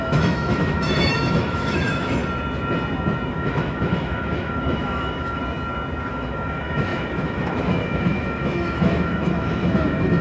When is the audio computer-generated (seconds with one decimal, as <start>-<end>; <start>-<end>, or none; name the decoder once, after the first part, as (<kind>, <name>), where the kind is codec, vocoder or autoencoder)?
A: 0.0-2.2 (autoencoder, DAC-VAE); 3.3-5.4; 6.1-10.2